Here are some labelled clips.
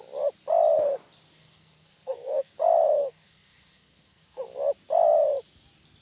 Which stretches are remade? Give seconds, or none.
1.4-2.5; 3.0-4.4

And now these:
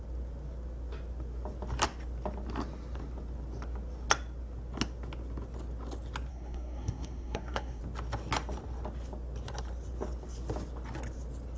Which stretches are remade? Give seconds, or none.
6.3-7.8

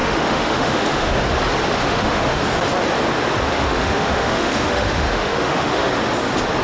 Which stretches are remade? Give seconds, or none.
0.0-1.2; 1.8-2.4; 3.5-5.9

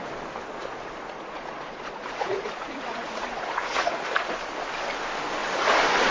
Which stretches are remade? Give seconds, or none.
0.6-4.1

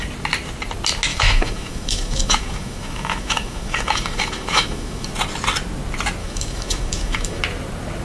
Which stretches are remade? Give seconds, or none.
1.1-5.1; 6.2-7.4

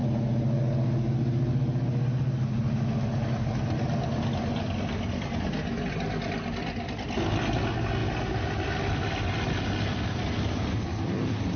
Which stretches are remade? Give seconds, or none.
none